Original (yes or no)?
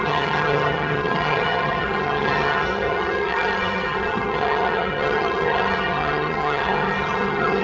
no